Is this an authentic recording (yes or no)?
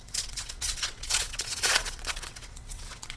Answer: no